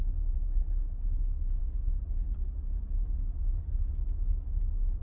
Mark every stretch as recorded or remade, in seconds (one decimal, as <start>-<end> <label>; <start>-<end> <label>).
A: 0.0-5.0 recorded